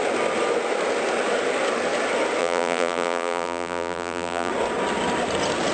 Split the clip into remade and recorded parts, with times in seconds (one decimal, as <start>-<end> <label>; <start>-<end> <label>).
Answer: 0.0-2.4 recorded; 2.4-4.5 remade; 4.5-5.7 recorded